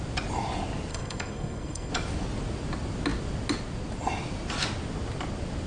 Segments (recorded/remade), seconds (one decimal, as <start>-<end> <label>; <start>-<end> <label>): 0.0-0.9 recorded; 0.9-1.9 remade; 1.9-5.7 recorded